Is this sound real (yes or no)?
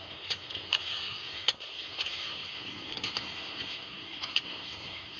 no